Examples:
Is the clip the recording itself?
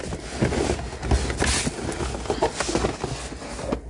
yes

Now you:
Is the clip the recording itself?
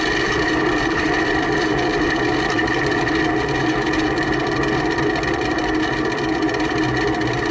yes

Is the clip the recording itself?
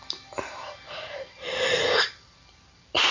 no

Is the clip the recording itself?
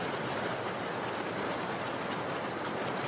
no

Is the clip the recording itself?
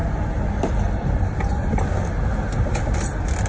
yes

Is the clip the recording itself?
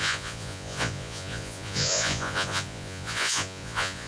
no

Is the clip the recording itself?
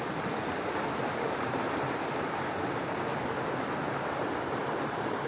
yes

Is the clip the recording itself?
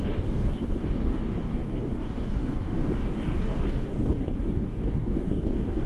no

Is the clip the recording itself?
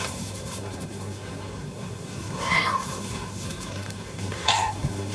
no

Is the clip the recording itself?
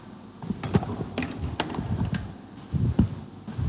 yes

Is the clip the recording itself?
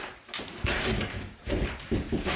no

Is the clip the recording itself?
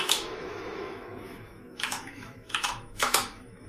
no